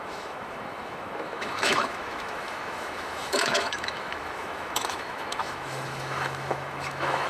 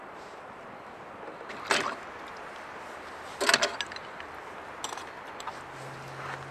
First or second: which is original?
second